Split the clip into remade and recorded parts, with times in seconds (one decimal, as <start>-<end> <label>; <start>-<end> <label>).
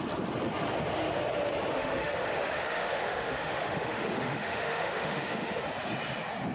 0.0-1.7 recorded; 1.7-5.6 remade; 5.6-6.5 recorded